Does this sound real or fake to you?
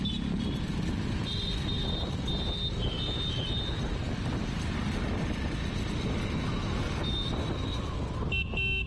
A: real